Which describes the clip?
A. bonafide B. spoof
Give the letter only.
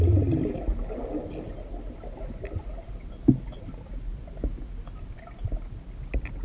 A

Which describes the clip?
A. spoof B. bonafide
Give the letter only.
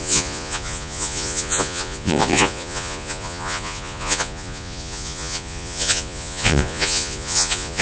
A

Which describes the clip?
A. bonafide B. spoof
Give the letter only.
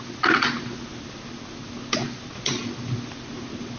A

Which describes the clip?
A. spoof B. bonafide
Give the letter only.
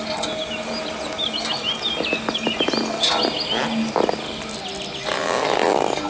B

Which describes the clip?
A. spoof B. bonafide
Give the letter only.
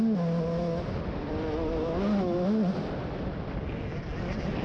B